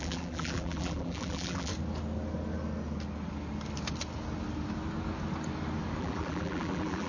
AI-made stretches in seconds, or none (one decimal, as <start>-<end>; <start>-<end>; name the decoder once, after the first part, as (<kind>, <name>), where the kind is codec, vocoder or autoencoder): 0.0-1.7 (vocoder, BigVGAN v2); 6.0-7.1